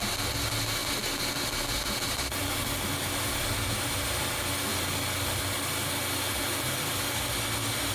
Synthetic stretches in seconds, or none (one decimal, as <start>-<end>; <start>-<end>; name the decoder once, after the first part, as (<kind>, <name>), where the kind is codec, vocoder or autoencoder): none